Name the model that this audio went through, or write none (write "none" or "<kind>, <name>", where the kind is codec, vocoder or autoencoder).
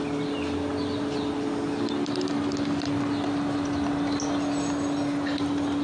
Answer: none